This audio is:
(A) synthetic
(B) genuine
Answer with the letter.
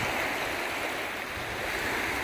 B